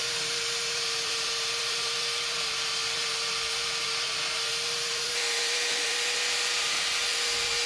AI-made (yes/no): yes